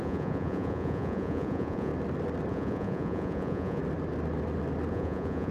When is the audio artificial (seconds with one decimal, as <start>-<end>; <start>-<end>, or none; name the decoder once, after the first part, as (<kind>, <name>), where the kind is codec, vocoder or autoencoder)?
0.0-1.9 (vocoder, Vocos); 2.5-3.8; 4.9-5.5